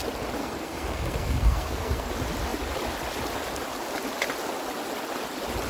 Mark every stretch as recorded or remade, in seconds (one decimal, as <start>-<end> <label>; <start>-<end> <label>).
0.0-0.4 recorded; 0.4-2.1 remade; 2.1-5.7 recorded

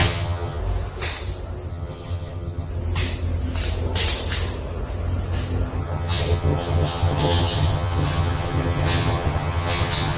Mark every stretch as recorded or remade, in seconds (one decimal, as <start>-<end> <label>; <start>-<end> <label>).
0.0-0.6 remade; 0.6-1.7 recorded; 1.7-2.7 remade; 2.7-5.8 recorded; 5.8-10.2 remade

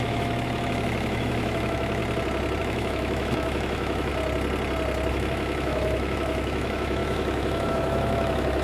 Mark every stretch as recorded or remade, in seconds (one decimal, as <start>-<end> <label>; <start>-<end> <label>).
0.0-2.0 remade; 2.0-2.6 recorded; 2.6-4.1 remade; 4.1-5.1 recorded; 5.1-8.6 remade